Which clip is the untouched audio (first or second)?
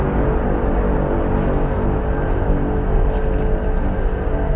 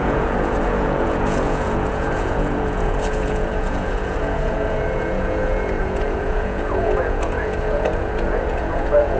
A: first